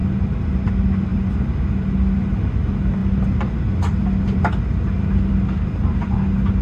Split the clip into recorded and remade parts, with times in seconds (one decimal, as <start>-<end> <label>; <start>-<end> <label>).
0.0-6.6 recorded